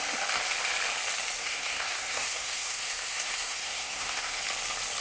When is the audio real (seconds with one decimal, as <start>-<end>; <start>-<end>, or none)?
0.0-1.4; 4.4-5.0